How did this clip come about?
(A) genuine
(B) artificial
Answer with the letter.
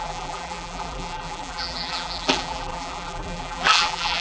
B